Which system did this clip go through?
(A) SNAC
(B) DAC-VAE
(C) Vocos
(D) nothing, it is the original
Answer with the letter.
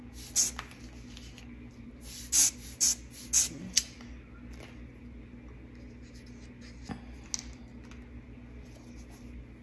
D